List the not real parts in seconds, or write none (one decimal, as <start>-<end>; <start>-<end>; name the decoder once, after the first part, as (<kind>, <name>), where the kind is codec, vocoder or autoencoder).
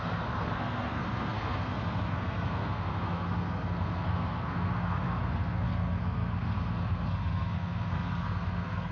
0.0-8.9 (codec, SNAC)